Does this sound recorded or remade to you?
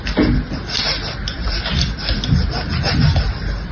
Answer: recorded